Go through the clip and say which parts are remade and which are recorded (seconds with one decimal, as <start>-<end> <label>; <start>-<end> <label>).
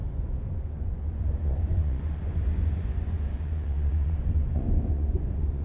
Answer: 0.0-5.6 remade